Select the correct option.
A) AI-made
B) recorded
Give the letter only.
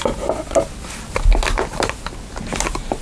B